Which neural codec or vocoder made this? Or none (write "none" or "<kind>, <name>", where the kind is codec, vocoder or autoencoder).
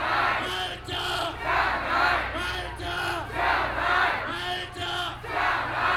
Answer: none